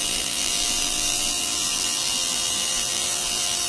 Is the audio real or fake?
fake